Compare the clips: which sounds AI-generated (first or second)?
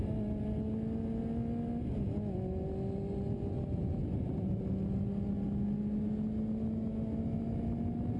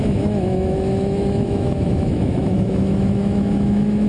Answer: second